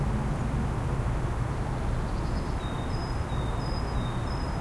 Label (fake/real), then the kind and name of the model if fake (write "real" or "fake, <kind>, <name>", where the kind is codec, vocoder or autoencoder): real